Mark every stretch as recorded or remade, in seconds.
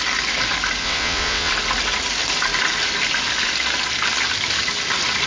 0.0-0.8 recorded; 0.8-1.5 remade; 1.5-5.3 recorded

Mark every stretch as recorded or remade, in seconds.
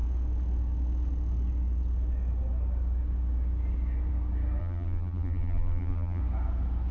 0.0-4.6 recorded; 4.6-6.2 remade; 6.2-6.9 recorded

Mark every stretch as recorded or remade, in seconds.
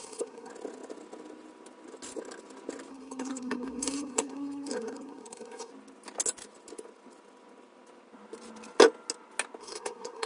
0.0-0.5 remade; 0.5-2.9 recorded; 2.9-5.7 remade; 5.7-9.6 recorded; 9.6-10.3 remade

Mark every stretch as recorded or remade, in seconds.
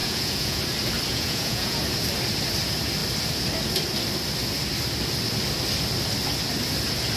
0.0-0.6 remade; 0.6-1.1 recorded; 1.1-1.8 remade; 1.8-7.2 recorded